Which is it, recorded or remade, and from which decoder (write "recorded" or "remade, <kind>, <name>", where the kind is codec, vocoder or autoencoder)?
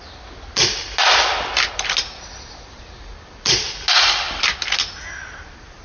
recorded